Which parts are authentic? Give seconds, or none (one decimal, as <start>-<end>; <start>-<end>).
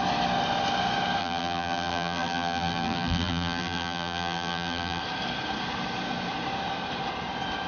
0.0-1.2; 5.0-7.7